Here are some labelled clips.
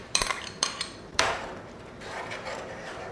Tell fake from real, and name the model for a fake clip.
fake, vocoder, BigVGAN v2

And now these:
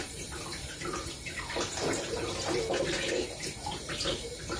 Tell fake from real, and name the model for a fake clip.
fake, vocoder, BigVGAN v2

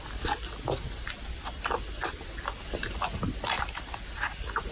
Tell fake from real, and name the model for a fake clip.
real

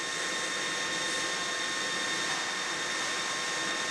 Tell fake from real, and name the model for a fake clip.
real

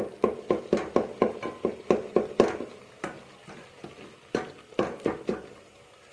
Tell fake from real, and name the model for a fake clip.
real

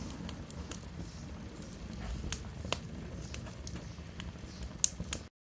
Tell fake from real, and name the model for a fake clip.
real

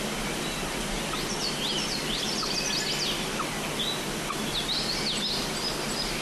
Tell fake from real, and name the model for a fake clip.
real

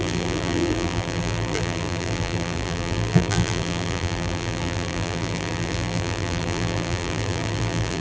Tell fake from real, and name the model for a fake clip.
fake, vocoder, BigVGAN v2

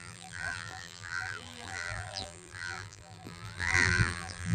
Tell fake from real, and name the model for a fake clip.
fake, vocoder, BigVGAN v2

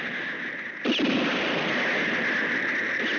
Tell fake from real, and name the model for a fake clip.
real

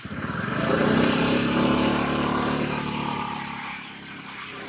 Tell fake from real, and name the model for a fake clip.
fake, vocoder, BigVGAN v2